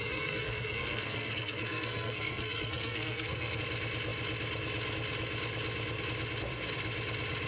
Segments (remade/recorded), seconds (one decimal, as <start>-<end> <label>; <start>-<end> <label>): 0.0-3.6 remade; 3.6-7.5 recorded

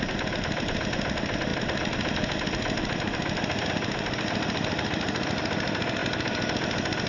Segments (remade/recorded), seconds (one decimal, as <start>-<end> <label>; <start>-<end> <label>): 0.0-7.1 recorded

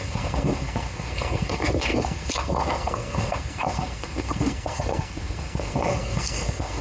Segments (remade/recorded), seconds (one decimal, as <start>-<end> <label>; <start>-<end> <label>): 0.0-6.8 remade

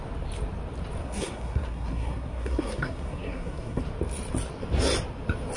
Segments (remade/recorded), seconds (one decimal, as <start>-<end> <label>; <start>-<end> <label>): 0.0-1.0 recorded; 1.0-3.8 remade; 3.8-5.6 recorded

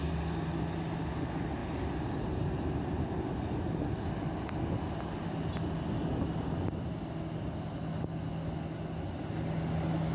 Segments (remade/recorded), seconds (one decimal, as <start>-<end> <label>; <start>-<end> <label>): 0.0-10.1 recorded